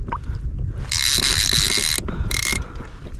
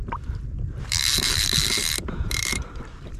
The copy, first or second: second